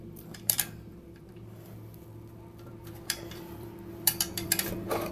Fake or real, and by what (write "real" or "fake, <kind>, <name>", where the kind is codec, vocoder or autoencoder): fake, vocoder, BigVGAN v2